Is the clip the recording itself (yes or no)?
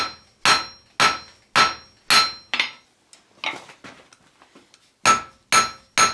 yes